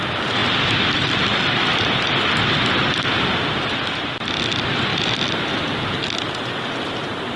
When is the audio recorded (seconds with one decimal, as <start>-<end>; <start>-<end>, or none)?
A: 0.0-7.4